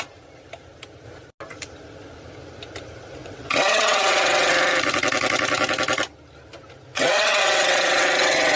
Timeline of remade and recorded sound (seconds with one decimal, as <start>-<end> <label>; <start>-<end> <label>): 0.0-3.2 recorded; 3.2-4.5 remade; 4.5-6.9 recorded; 6.9-8.6 remade